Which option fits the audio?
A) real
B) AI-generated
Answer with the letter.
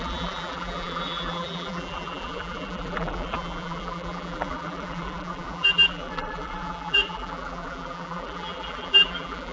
B